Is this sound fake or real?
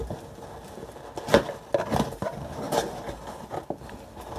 real